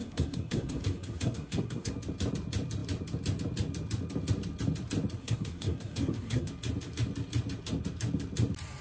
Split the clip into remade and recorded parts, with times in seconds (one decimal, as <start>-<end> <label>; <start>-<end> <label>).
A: 0.0-1.9 remade; 1.9-5.2 recorded; 5.2-6.5 remade; 6.5-8.8 recorded